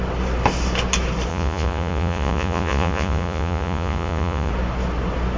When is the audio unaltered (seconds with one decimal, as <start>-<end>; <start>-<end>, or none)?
0.0-1.3; 4.5-5.4